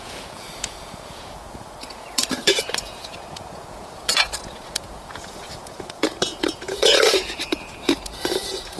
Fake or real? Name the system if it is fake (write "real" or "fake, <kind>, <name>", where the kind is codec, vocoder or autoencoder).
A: fake, vocoder, Vocos